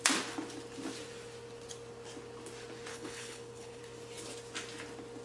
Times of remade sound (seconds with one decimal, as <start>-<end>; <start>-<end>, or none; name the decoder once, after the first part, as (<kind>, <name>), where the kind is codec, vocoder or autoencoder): 2.9-3.8 (codec, HILCodec)